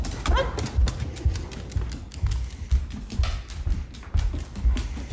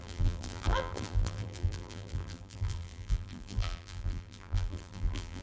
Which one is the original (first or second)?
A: first